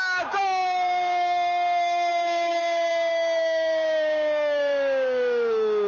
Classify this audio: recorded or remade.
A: remade